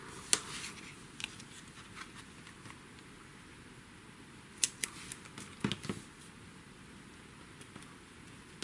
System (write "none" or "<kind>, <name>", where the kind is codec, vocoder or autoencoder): none